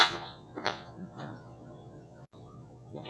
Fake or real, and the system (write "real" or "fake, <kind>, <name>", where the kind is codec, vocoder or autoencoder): fake, vocoder, Vocos